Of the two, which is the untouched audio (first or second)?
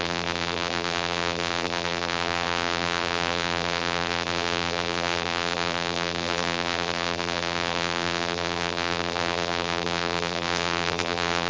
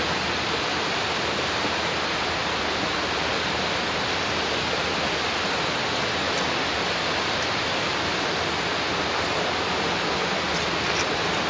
second